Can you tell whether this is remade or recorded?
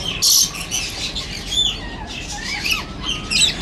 recorded